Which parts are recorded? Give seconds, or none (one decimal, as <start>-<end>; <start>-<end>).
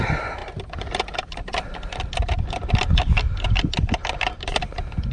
0.0-5.1